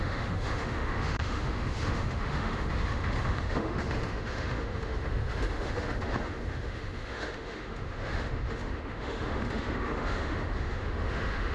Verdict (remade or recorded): remade